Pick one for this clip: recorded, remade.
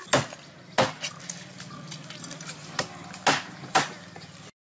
recorded